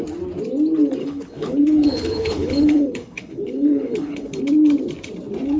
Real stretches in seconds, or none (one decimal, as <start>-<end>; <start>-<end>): 0.0-1.0; 4.4-5.6